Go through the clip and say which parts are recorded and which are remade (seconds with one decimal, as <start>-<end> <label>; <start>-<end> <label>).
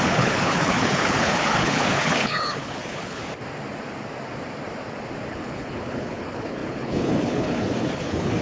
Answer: 0.0-3.2 remade; 3.2-5.3 recorded; 5.3-8.4 remade